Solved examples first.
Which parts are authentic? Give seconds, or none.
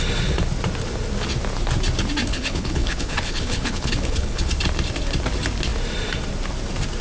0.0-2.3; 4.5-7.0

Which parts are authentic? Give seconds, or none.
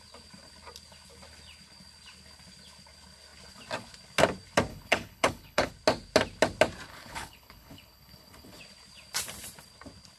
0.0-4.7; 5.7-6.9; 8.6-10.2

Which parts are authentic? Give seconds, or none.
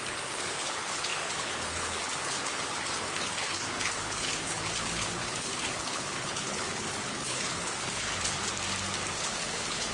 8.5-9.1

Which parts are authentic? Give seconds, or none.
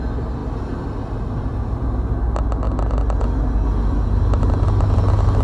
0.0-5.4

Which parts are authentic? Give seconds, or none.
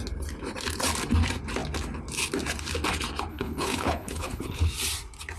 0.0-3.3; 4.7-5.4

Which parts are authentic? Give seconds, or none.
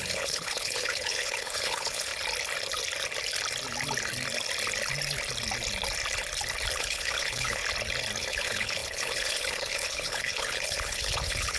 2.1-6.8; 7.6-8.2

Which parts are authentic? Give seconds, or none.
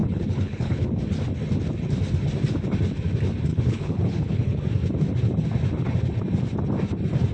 1.0-3.5; 4.6-7.3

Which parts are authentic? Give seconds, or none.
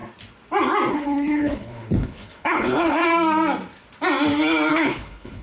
0.0-0.9; 3.0-4.7